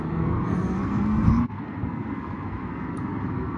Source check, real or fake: fake